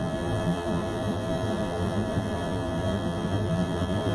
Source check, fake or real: fake